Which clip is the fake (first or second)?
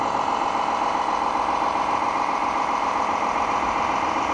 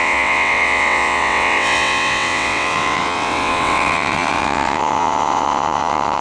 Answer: second